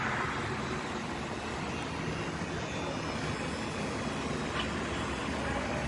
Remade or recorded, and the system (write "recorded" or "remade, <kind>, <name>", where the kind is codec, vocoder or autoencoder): recorded